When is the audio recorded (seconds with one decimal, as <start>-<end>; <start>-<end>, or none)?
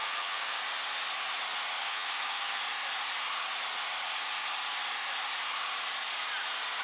0.6-1.8; 2.6-6.8